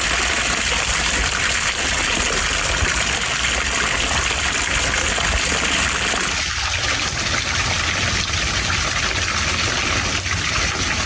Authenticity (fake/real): real